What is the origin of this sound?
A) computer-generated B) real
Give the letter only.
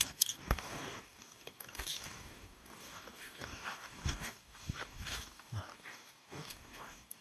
A